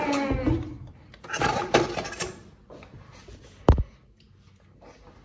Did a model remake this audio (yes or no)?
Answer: no